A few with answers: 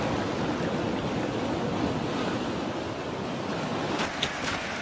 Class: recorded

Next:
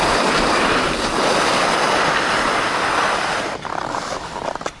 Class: remade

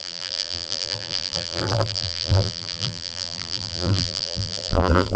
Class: remade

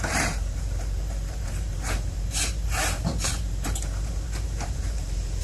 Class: remade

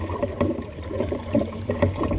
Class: remade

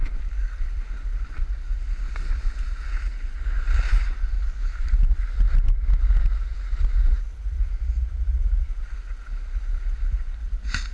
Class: recorded